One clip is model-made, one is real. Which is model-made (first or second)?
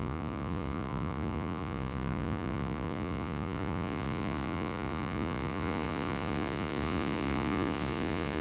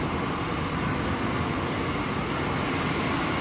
first